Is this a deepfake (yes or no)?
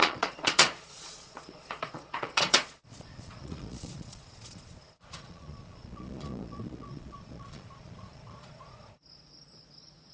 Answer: yes